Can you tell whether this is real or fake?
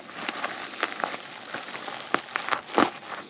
real